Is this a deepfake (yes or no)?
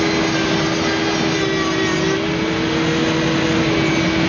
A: no